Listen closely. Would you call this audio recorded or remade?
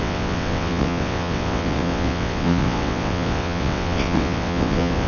remade